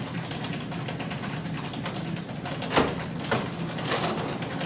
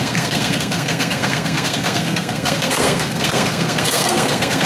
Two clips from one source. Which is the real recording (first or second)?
first